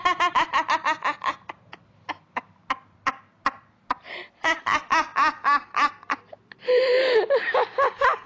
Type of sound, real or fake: real